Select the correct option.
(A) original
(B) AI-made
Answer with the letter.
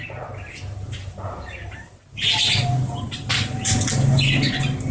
A